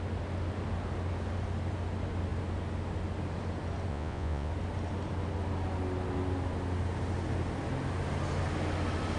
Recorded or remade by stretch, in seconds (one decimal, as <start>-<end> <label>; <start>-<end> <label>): 0.0-3.9 recorded; 3.9-4.5 remade; 4.5-9.2 recorded